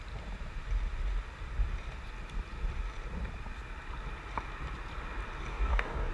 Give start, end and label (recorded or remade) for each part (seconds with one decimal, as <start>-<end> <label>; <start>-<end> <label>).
0.0-5.5 recorded; 5.5-6.1 remade